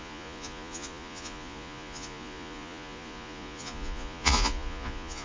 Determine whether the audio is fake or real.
fake